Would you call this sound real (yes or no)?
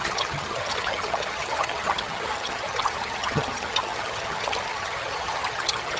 no